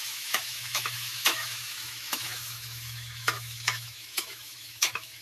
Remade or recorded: remade